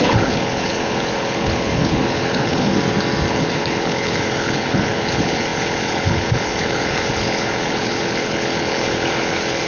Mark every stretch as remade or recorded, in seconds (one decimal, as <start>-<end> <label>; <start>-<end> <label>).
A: 0.0-2.7 remade; 2.7-3.3 recorded; 3.3-9.7 remade